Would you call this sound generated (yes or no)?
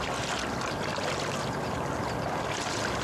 no